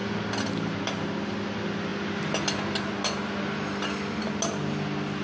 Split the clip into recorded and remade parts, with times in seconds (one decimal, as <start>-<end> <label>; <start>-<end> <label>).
0.0-5.2 recorded